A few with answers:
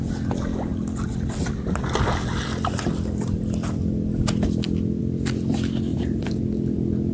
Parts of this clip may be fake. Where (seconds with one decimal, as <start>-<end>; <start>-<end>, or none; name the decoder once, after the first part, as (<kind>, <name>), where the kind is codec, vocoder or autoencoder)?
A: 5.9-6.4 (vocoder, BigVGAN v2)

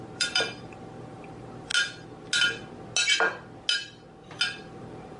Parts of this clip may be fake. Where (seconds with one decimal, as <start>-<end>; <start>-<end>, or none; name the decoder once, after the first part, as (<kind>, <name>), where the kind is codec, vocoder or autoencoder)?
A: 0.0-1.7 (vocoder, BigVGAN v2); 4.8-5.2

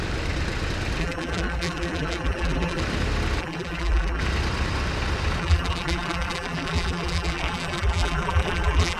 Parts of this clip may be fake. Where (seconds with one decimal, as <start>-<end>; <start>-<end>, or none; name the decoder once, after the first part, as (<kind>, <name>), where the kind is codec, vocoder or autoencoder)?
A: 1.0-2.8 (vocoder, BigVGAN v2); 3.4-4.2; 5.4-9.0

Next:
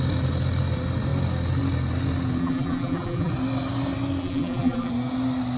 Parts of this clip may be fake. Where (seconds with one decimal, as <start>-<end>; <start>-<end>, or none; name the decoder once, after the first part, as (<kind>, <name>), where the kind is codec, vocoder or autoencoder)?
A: 2.4-3.3 (vocoder, BigVGAN v2); 4.2-4.9

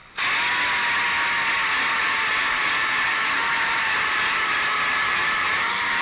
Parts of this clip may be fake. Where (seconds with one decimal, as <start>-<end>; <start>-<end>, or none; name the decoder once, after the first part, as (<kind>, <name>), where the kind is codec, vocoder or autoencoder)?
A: 2.0-6.0 (vocoder, BigVGAN v2)

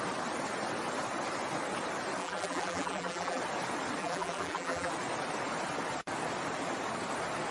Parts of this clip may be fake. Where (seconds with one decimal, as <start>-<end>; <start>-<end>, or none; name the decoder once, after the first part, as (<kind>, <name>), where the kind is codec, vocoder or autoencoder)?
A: 2.2-3.4 (vocoder, BigVGAN v2); 4.0-4.9

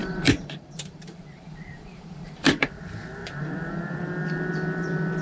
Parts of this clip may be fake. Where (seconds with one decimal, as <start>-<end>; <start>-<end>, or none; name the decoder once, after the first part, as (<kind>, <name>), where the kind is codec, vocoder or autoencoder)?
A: 0.0-2.8 (vocoder, BigVGAN v2); 3.2-3.7